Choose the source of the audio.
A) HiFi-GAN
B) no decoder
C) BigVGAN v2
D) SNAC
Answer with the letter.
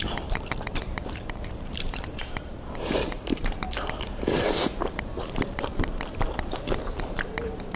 C